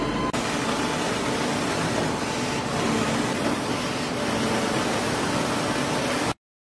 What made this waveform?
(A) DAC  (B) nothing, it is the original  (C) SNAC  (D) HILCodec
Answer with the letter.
B